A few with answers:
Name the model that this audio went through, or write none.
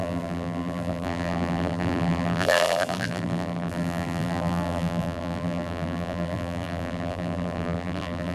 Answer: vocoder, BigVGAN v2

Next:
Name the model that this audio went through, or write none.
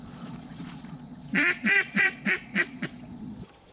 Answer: vocoder, Vocos